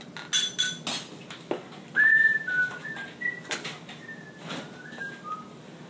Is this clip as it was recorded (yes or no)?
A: yes